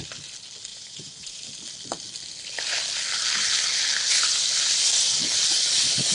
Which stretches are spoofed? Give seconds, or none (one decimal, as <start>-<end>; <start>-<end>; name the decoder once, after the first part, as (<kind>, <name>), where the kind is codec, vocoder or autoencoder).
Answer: 0.7-1.4 (vocoder, Vocos)